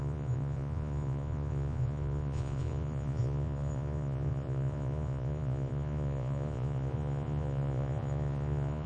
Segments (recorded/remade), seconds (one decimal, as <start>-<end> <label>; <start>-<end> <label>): 0.0-8.9 remade